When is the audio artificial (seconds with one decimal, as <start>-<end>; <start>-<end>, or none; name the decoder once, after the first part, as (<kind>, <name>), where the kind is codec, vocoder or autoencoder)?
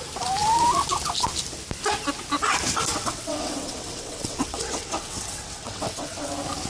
2.9-6.3 (vocoder, WaveNeXt)